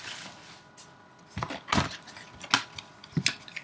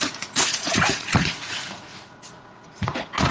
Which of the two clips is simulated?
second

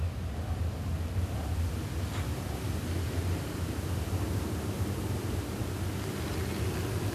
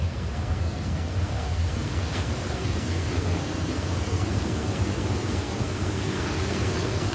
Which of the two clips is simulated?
second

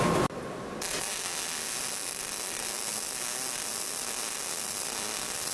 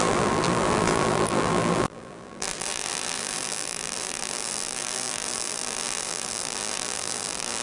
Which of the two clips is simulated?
second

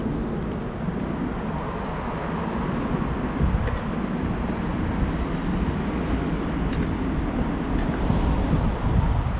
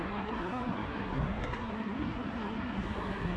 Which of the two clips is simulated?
second